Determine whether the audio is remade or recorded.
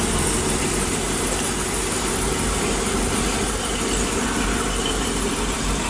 remade